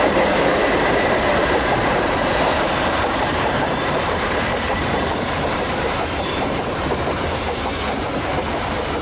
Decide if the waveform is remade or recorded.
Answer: remade